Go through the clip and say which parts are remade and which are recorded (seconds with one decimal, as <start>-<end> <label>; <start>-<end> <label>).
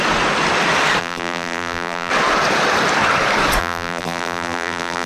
0.0-1.0 recorded; 1.0-2.1 remade; 2.1-3.6 recorded; 3.6-5.1 remade